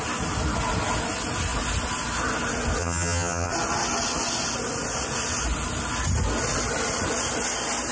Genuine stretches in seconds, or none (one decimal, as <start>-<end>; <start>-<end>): 0.0-2.8; 3.5-7.9